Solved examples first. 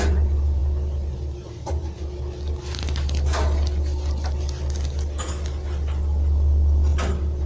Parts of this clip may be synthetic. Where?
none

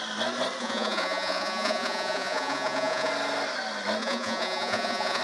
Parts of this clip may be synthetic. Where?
0.6-3.1 (vocoder, Vocos); 4.0-5.2

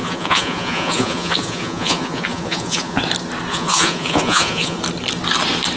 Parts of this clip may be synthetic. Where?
0.0-3.0 (vocoder, Vocos); 3.5-4.8

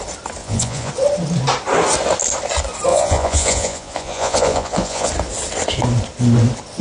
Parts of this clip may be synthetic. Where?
0.4-0.9 (vocoder, Vocos); 2.9-5.1

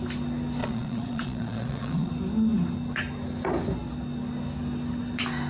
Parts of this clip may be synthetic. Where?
0.6-2.1 (vocoder, Vocos)

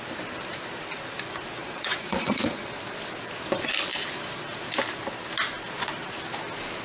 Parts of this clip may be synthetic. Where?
1.6-2.7 (vocoder, Vocos)